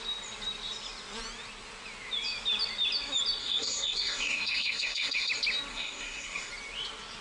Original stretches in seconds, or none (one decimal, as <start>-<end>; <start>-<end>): 0.0-3.4; 5.3-5.7; 6.5-7.2